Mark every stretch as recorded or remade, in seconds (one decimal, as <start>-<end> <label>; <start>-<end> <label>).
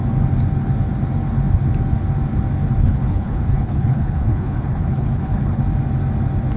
0.0-2.8 recorded; 2.8-5.6 remade; 5.6-6.6 recorded